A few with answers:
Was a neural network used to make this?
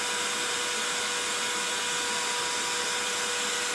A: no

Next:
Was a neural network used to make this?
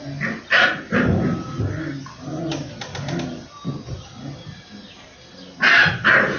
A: no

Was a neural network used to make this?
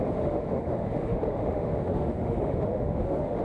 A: yes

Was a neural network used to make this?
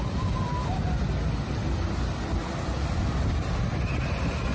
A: no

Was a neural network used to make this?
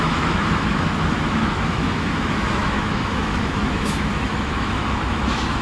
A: yes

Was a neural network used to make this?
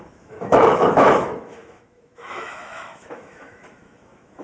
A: yes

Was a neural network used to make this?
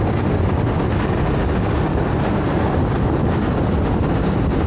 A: no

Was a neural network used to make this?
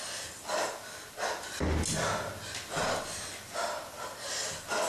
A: no